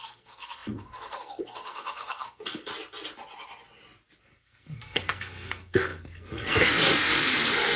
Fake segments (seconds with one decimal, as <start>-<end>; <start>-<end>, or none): 0.0-2.7; 4.2-7.8